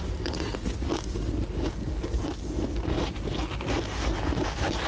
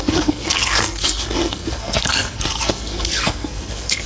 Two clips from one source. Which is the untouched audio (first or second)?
first